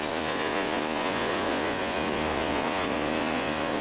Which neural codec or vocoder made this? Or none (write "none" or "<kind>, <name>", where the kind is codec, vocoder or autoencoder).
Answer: vocoder, Vocos